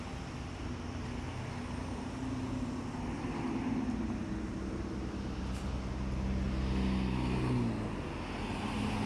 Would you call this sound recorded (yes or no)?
yes